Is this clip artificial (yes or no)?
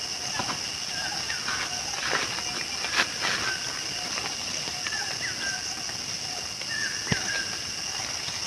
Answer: no